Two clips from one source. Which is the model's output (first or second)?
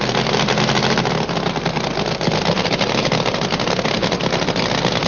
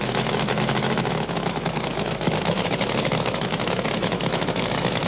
second